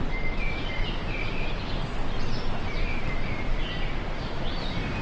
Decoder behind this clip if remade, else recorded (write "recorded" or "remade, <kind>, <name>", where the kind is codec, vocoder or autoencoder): recorded